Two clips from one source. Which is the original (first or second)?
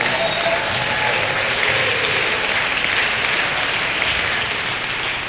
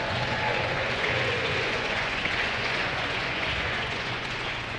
first